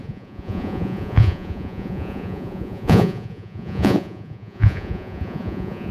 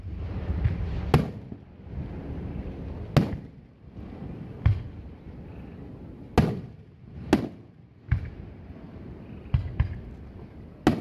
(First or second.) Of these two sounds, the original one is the second